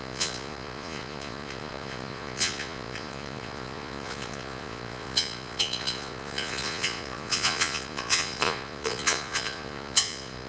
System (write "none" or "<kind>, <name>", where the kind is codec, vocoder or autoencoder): vocoder, Vocos